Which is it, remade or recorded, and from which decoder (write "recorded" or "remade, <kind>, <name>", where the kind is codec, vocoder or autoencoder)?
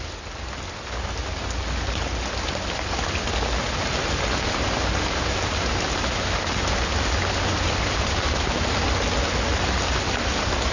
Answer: recorded